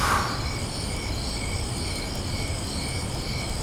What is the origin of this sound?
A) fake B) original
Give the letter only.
B